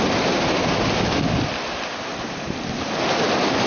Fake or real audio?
real